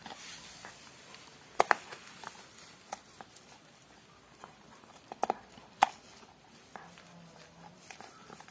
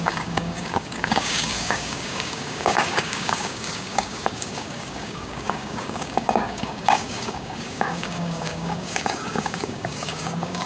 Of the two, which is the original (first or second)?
first